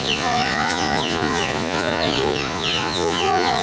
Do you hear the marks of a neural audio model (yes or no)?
yes